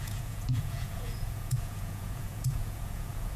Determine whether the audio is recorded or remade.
remade